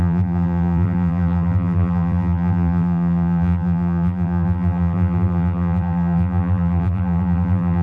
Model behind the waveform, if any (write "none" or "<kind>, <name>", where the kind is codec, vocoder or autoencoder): vocoder, BigVGAN v2